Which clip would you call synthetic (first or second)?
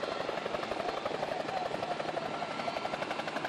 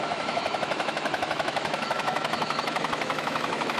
second